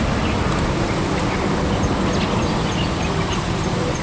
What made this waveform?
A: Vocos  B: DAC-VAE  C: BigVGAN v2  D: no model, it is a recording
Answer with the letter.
D